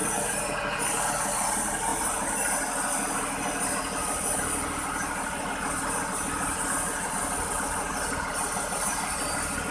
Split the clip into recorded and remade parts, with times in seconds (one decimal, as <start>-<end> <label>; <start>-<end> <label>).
0.0-9.7 recorded